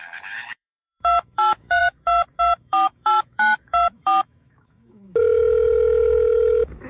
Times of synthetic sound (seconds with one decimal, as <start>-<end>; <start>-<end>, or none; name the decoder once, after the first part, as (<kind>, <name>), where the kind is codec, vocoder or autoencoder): 0.0-6.9 (autoencoder, DAC-VAE)